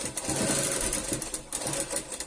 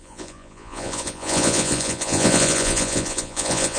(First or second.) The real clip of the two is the first